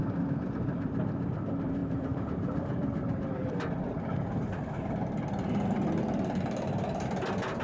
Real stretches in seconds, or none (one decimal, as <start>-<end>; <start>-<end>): 0.0-1.8; 3.5-7.6